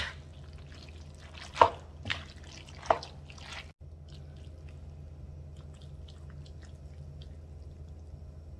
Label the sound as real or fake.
real